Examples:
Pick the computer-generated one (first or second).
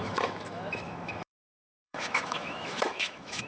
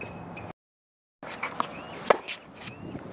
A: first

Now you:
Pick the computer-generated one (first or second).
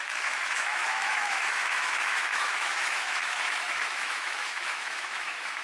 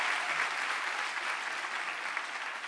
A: first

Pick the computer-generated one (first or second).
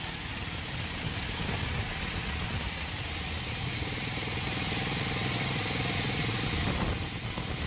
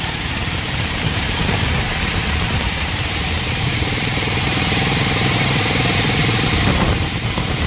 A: second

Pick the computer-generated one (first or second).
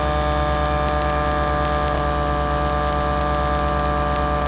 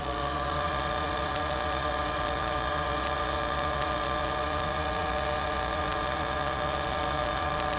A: second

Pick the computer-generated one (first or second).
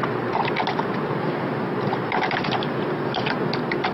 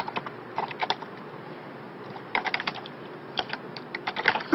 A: second